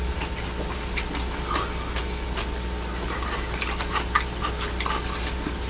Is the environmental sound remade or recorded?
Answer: recorded